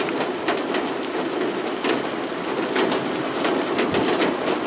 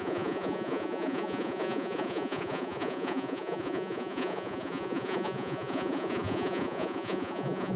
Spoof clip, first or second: second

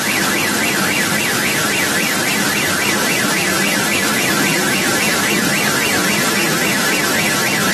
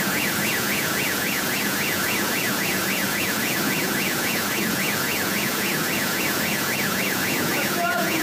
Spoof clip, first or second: second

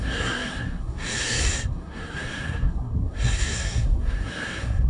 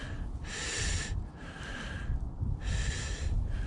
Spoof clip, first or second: first